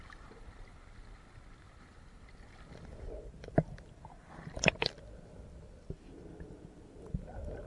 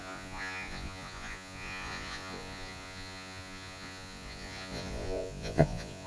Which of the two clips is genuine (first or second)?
first